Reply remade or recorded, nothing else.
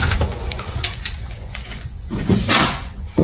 remade